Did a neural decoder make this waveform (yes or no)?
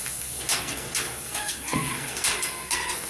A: yes